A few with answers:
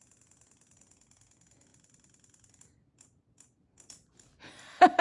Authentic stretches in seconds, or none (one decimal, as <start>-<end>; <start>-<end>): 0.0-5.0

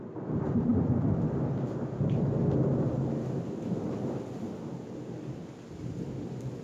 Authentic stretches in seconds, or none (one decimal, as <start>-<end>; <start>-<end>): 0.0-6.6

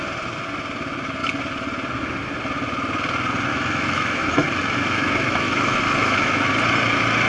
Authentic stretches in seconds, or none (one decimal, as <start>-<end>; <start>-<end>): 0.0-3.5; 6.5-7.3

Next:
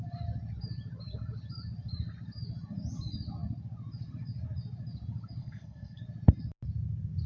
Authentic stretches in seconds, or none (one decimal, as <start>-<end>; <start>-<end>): 0.0-5.4; 6.0-7.3

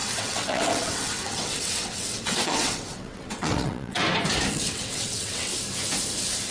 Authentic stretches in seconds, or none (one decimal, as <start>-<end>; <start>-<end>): 4.0-4.5; 5.5-6.5

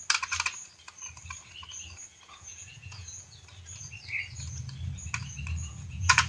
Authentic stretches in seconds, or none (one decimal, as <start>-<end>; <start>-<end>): 0.0-2.1; 3.4-5.6

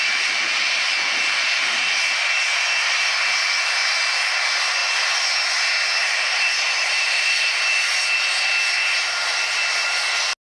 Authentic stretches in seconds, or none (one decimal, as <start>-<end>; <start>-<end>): 0.0-6.0; 7.7-10.4